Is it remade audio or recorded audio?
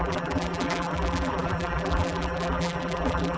remade